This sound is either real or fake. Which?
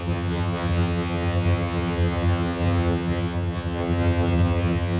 fake